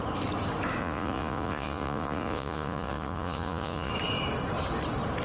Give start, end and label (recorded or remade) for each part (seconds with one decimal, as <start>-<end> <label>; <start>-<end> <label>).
0.0-0.8 recorded; 0.8-3.9 remade; 3.9-5.2 recorded